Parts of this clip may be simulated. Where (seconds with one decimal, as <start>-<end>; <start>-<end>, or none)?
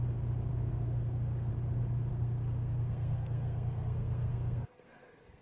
0.5-1.5; 2.1-5.4